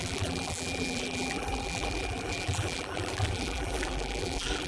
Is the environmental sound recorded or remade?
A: remade